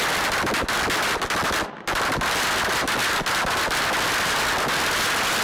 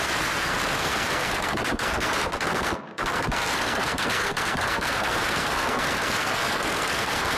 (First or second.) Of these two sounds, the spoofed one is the second